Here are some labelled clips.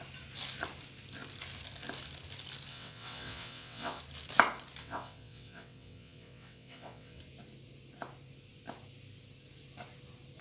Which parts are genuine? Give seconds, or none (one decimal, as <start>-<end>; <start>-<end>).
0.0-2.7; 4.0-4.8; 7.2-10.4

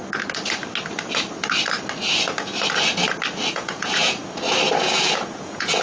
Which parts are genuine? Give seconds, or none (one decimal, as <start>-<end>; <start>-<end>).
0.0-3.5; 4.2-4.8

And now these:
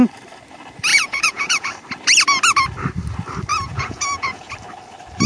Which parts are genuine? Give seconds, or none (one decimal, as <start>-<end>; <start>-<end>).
0.0-0.9; 1.7-3.5; 4.5-5.3

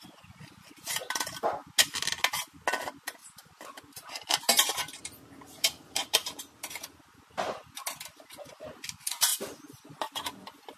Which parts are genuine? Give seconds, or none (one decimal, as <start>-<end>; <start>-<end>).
0.0-3.2; 6.4-10.8

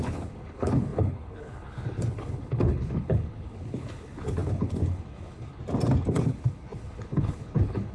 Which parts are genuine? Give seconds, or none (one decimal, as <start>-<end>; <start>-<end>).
5.6-6.1

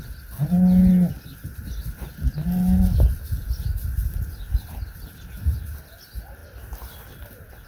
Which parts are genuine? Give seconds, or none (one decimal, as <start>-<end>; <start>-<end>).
0.0-7.7